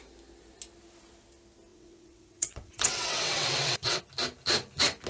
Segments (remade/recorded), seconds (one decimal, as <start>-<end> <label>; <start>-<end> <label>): 0.0-1.7 recorded; 1.7-4.0 remade; 4.0-5.1 recorded